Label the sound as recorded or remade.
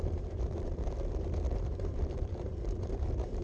remade